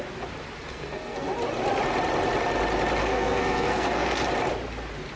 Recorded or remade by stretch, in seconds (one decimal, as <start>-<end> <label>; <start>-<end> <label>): 0.0-0.7 recorded; 0.7-1.3 remade; 1.3-3.0 recorded; 3.0-4.2 remade; 4.2-5.2 recorded